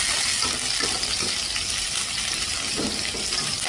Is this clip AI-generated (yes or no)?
no